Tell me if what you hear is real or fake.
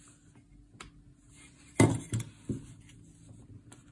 real